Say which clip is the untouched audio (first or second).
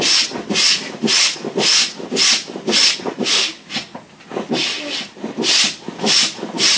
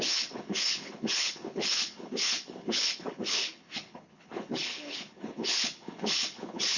first